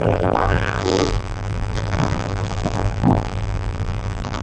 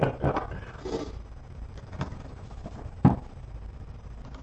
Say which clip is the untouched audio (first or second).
second